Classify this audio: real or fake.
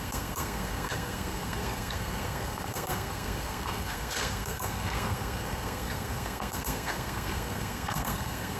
fake